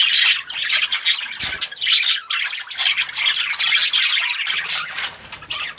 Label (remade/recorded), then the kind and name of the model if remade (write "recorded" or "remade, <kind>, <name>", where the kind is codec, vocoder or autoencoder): recorded